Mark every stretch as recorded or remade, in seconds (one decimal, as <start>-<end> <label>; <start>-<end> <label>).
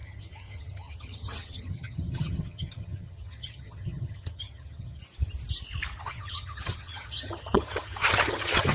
0.0-5.0 remade; 5.0-6.0 recorded; 6.0-8.7 remade